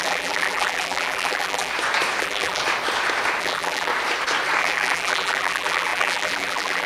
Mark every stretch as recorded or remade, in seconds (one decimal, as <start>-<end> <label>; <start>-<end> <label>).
0.0-1.7 remade; 1.7-2.2 recorded; 2.2-2.6 remade; 2.6-3.4 recorded; 3.4-3.9 remade; 3.9-4.6 recorded; 4.6-6.9 remade